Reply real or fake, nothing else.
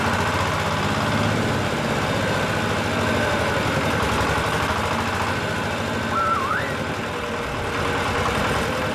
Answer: real